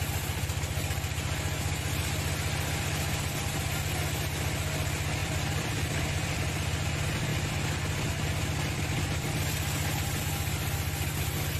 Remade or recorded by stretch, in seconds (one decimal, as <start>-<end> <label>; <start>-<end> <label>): 0.0-5.2 recorded; 5.2-6.4 remade; 6.4-11.6 recorded